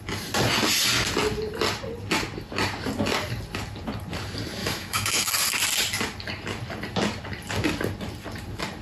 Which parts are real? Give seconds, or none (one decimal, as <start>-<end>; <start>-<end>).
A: 0.0-4.6; 5.3-8.8